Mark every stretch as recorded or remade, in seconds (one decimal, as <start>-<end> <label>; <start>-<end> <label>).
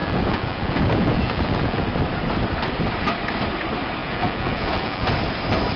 0.0-1.9 remade; 1.9-4.0 recorded; 4.0-5.1 remade; 5.1-5.8 recorded